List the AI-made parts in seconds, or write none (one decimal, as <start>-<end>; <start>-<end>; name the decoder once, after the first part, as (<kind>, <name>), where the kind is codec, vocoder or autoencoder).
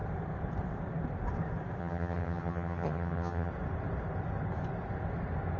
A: 1.8-3.5 (vocoder, HiFi-GAN)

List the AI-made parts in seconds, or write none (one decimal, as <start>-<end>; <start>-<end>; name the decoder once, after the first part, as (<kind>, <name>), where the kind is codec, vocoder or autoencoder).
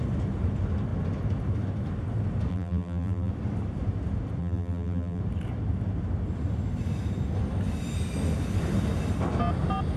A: 2.5-3.3 (vocoder, BigVGAN v2); 4.4-5.2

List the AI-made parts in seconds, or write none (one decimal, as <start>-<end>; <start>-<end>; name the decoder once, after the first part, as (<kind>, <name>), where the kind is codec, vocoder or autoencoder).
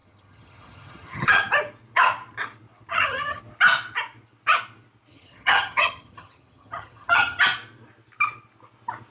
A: 0.0-1.4 (vocoder, HiFi-GAN); 2.9-3.4; 5.1-7.4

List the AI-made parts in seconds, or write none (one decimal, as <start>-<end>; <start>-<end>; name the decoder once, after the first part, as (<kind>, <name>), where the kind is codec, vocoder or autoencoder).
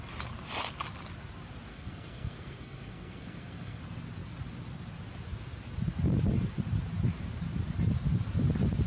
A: 1.7-3.8 (codec, SNAC)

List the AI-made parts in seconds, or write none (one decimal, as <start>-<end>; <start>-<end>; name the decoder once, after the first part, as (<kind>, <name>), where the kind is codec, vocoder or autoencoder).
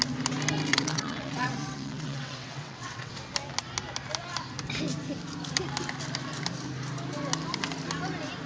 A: 0.7-3.1 (vocoder, WaveNeXt)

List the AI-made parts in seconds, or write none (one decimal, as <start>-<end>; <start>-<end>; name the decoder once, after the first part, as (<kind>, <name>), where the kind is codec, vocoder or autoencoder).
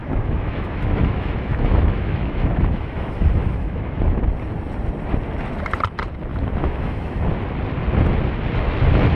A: 0.0-4.3 (autoencoder, DAC-VAE); 6.3-7.2